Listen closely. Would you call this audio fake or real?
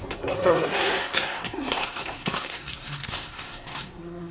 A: fake